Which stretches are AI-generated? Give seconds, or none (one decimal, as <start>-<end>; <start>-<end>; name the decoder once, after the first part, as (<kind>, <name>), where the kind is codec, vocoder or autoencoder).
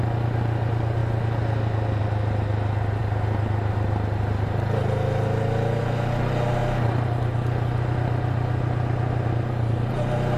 none